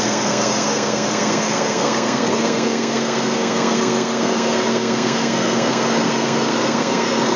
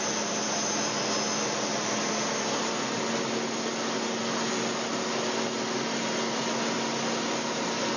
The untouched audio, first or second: second